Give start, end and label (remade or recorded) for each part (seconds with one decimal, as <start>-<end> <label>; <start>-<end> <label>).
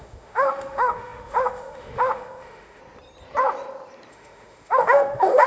0.0-2.8 remade; 2.8-4.1 recorded; 4.1-5.5 remade